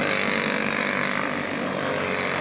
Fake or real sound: real